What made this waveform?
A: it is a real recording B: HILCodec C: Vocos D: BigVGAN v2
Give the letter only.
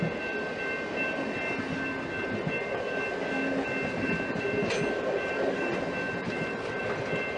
A